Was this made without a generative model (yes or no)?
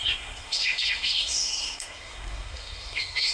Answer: no